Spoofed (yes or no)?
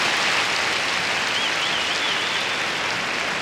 no